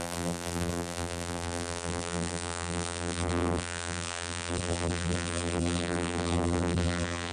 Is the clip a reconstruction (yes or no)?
yes